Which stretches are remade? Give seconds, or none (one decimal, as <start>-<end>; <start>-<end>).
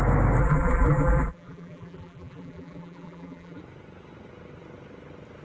0.4-3.6